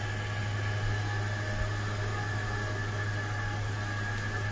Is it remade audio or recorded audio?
recorded